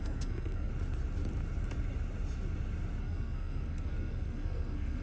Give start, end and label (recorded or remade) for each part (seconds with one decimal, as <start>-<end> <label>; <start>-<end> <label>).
0.0-0.7 remade; 0.7-3.0 recorded; 3.0-5.0 remade